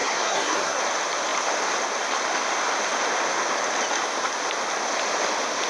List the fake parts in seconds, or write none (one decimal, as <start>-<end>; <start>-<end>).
0.0-0.8